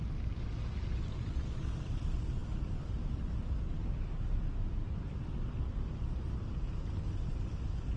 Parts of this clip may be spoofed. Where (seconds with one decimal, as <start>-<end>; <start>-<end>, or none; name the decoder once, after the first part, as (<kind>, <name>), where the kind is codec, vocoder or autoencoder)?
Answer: none